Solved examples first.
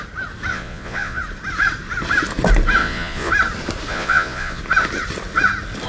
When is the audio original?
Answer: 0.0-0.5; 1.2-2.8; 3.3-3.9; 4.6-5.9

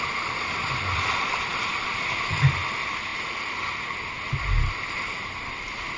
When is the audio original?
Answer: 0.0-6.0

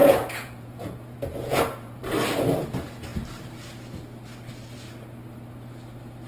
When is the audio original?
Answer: 2.0-6.3